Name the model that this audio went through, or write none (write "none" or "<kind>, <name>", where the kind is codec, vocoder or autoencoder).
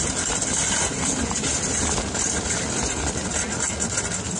none